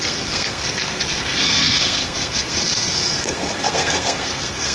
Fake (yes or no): yes